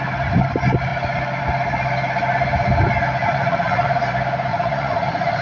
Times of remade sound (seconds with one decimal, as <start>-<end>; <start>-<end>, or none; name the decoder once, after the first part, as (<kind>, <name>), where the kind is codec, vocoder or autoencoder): 3.2-3.9 (vocoder, Vocos); 4.5-5.4